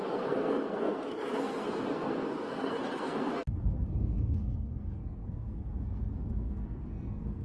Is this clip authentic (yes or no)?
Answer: no